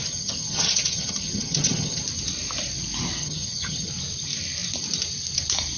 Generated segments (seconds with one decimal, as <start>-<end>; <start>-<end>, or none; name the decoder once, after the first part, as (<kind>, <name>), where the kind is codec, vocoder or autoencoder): 0.0-2.0 (vocoder, HiFi-GAN); 3.2-3.9

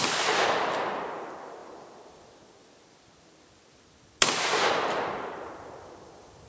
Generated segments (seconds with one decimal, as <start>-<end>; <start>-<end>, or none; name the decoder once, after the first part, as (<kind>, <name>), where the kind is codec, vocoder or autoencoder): none

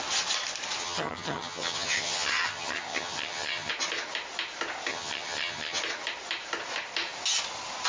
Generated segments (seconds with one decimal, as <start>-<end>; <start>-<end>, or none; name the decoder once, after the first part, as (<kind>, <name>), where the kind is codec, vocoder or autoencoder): 0.8-3.7 (vocoder, HiFi-GAN); 4.9-5.8

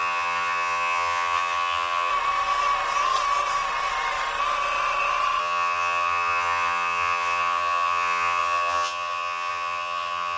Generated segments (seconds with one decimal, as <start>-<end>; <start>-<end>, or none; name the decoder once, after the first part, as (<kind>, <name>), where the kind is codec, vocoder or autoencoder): 0.0-2.1 (vocoder, HiFi-GAN); 5.4-10.4

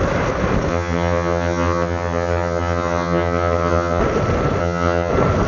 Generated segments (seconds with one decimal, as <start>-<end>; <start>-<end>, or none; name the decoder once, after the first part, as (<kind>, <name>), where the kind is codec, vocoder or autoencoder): 0.7-4.0 (vocoder, HiFi-GAN); 4.6-5.1

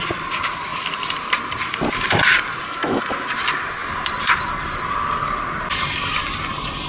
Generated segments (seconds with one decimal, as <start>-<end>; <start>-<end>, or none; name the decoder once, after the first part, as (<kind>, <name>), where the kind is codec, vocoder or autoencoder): none

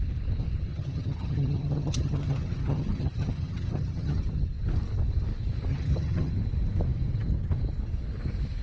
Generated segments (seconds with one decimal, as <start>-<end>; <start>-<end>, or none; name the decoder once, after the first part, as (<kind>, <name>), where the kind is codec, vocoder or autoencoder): 0.7-4.2 (vocoder, HiFi-GAN); 5.7-6.3